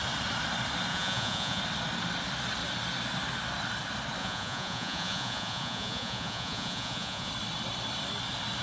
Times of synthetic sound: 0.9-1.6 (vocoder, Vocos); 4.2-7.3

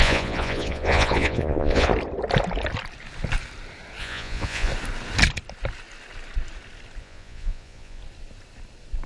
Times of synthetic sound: 0.0-1.9 (vocoder, Vocos); 4.0-4.7; 7.0-8.0

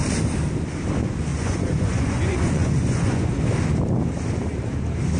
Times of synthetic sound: 1.3-3.4 (vocoder, Vocos)

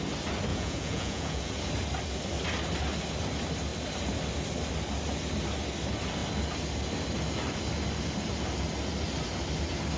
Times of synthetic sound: 0.5-1.5 (vocoder, Vocos)

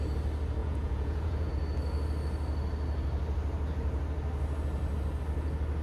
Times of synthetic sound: 0.6-1.5 (vocoder, Vocos)